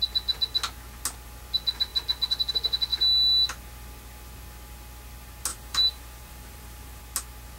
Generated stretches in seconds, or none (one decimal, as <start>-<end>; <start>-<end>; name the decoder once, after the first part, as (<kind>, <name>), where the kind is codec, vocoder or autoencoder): 5.5-7.0 (vocoder, BigVGAN v2)